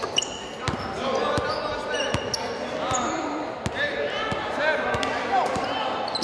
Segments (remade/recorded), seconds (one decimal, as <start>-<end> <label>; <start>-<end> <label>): 0.0-1.7 recorded; 1.7-2.3 remade; 2.3-6.2 recorded